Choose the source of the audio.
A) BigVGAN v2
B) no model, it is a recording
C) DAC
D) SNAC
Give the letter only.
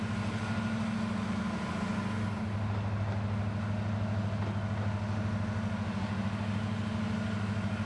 B